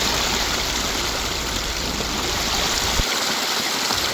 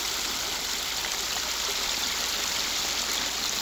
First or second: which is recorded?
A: second